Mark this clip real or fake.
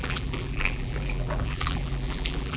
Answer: fake